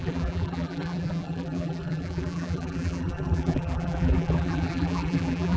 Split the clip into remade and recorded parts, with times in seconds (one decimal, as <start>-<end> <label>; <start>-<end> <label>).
0.0-5.6 remade